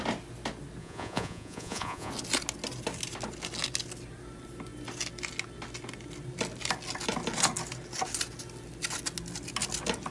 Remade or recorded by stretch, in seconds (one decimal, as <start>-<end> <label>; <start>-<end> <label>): 0.0-0.8 recorded; 0.8-2.1 remade; 2.1-10.1 recorded

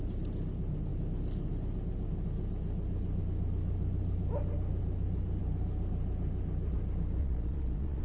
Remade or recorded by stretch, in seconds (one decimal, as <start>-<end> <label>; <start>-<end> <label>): 0.0-7.2 recorded; 7.2-8.0 remade

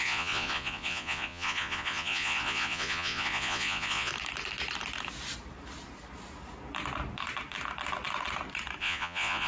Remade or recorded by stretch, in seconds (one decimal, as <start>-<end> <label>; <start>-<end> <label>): 0.0-4.1 remade; 4.1-8.8 recorded; 8.8-9.5 remade

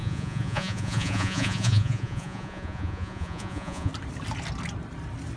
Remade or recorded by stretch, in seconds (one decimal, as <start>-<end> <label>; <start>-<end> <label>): 0.0-3.9 remade; 3.9-5.4 recorded

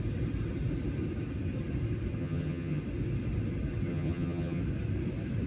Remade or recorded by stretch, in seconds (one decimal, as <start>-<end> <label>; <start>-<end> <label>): 0.0-2.2 recorded; 2.2-2.8 remade; 2.8-3.9 recorded; 3.9-4.6 remade; 4.6-5.5 recorded

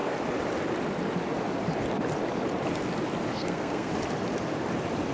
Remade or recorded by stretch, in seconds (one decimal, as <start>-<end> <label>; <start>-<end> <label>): 0.0-3.3 recorded; 3.3-3.9 remade; 3.9-5.1 recorded

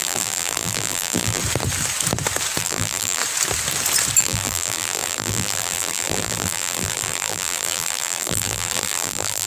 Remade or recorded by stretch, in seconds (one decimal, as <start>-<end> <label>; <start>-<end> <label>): 0.0-1.4 remade; 1.4-2.6 recorded; 2.6-3.2 remade; 3.2-4.2 recorded; 4.2-9.5 remade